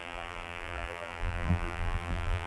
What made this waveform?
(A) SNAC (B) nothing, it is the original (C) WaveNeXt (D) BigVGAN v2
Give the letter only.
D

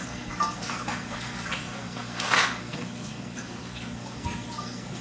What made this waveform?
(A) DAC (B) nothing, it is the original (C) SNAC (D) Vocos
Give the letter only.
C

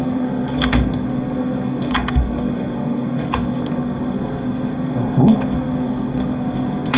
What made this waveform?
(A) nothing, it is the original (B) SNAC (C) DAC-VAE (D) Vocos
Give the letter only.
B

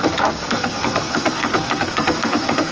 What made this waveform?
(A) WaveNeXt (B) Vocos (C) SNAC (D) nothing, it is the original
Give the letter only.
C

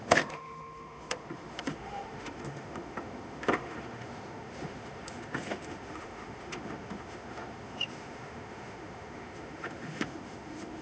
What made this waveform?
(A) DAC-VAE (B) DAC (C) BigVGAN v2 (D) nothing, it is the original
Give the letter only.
A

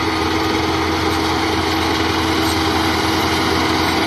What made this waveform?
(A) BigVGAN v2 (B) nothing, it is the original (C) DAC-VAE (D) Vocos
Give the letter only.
B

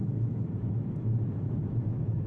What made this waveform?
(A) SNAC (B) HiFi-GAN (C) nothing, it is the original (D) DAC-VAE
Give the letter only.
D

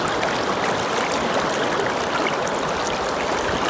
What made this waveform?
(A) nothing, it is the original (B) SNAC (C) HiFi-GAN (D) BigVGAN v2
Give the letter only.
A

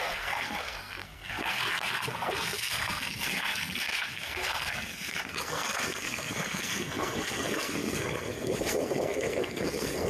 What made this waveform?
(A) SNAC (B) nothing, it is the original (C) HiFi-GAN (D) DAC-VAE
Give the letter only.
A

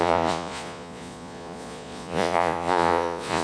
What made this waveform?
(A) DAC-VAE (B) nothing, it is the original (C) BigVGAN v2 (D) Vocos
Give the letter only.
D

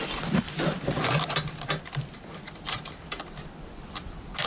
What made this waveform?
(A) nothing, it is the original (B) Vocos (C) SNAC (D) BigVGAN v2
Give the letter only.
A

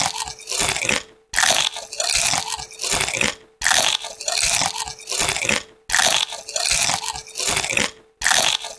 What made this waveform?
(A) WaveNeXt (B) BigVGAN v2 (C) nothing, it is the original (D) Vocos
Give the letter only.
C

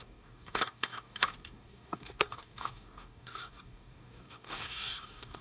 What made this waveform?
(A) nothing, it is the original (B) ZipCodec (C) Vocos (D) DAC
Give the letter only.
D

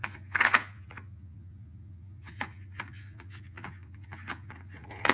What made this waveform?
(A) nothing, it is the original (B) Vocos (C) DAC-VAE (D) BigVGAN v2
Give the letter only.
B